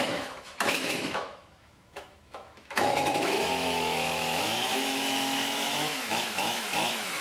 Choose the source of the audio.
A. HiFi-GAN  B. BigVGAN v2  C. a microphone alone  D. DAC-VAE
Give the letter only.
D